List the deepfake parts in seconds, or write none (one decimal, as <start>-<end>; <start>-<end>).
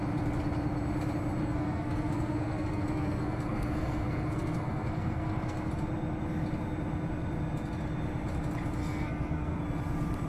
1.4-5.7; 8.8-9.6